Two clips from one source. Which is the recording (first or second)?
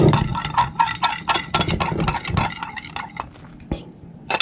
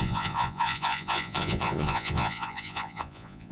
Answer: first